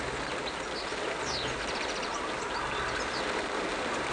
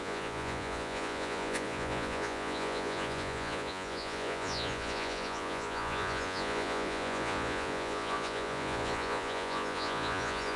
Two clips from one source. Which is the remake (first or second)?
second